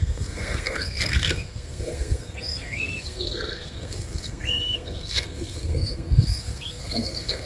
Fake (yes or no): yes